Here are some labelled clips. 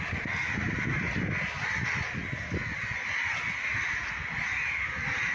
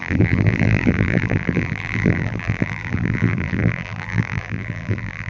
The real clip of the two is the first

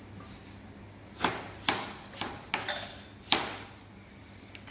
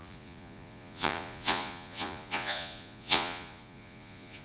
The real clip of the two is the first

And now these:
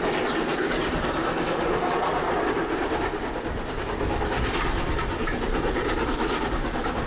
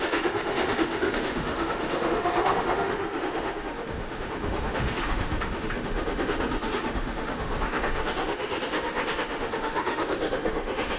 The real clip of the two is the first